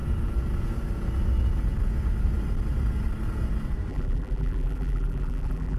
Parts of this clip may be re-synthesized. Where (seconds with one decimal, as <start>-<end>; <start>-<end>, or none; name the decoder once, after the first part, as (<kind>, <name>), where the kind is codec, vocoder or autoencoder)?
3.9-5.8 (vocoder, BigVGAN v2)